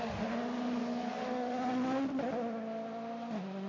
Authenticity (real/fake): real